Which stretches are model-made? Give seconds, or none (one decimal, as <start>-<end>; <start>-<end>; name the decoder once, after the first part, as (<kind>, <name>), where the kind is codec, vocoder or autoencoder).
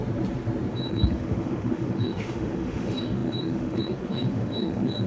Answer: 0.7-5.1 (autoencoder, DAC-VAE)